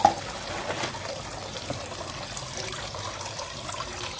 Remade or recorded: recorded